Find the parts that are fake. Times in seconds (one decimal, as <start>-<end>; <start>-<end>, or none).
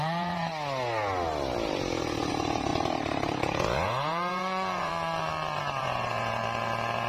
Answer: 0.0-0.5; 2.3-2.7; 3.4-4.9; 5.8-6.4